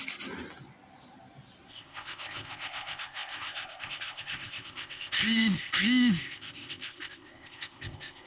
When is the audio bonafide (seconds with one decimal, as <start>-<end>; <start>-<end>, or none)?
0.0-1.7